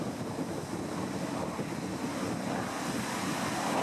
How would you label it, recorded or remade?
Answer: recorded